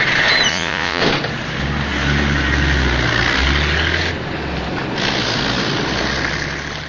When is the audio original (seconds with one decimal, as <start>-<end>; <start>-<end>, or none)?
0.0-0.5; 1.0-6.9